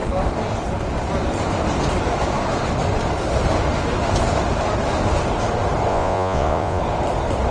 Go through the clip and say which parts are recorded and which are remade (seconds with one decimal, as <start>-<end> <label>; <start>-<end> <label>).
0.0-5.9 recorded; 5.9-6.8 remade; 6.8-7.5 recorded